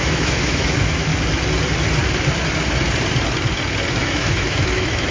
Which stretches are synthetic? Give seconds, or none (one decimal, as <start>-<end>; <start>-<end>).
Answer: 0.0-1.1; 3.9-5.1